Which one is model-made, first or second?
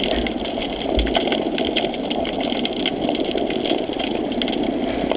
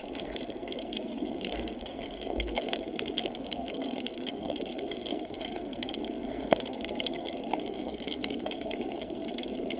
second